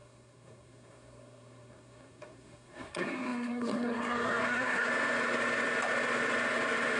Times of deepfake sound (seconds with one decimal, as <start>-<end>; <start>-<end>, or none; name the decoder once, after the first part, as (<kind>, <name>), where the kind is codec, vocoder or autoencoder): 0.0-4.9 (codec, SNAC)